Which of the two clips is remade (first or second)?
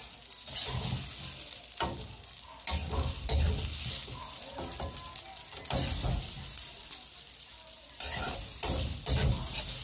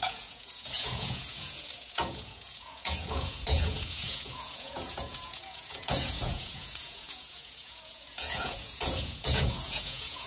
second